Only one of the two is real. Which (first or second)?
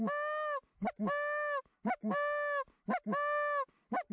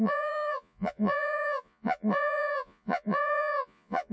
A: first